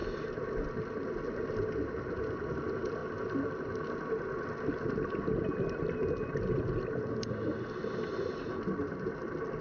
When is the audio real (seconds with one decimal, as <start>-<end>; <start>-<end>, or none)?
0.0-9.6

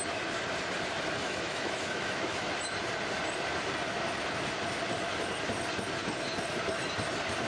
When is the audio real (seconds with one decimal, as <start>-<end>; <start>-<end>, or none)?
0.0-1.2; 2.5-7.5

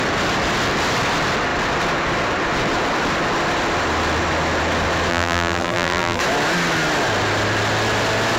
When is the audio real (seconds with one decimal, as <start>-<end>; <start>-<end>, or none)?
0.0-5.1; 6.2-8.4

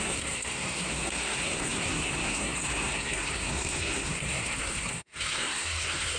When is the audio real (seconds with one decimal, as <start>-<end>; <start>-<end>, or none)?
none

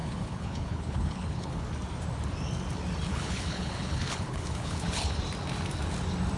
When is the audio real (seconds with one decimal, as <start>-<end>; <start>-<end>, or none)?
1.6-3.1; 5.2-6.4

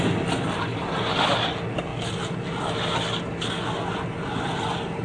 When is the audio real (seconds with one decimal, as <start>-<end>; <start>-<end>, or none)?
0.0-5.0

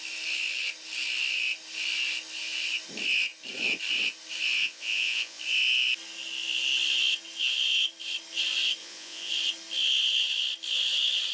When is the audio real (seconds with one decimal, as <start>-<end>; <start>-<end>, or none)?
0.0-4.6; 5.4-8.8; 9.3-11.3

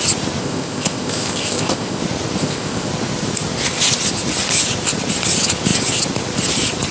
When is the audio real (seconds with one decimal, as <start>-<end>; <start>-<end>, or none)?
0.0-0.4; 2.0-2.4; 2.9-6.9